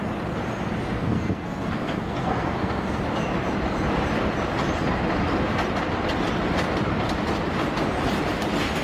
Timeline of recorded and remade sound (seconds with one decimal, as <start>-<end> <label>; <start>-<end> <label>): 0.0-1.0 recorded; 1.0-3.0 remade; 3.0-8.8 recorded